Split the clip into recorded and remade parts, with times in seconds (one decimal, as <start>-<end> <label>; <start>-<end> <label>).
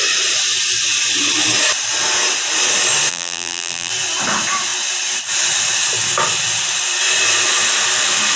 0.0-3.1 recorded; 3.1-3.9 remade; 3.9-8.4 recorded